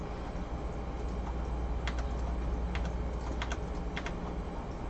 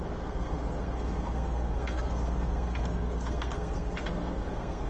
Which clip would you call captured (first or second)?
first